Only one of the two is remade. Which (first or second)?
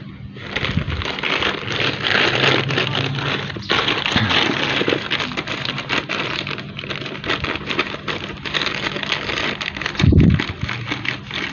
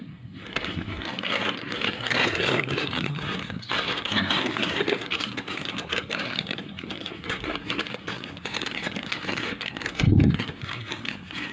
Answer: second